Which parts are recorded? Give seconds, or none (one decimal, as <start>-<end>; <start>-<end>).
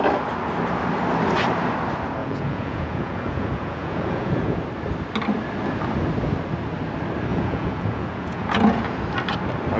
0.0-2.2; 4.6-7.3; 9.0-9.8